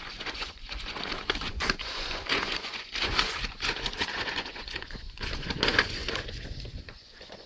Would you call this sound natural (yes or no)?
no